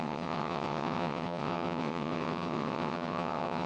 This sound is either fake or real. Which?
fake